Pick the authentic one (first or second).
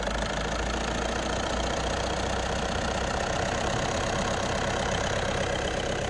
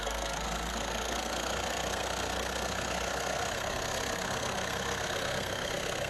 first